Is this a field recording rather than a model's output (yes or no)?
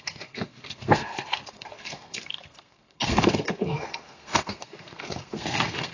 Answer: no